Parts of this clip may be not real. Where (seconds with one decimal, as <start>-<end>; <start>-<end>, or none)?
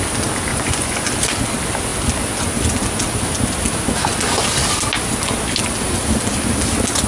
0.5-1.1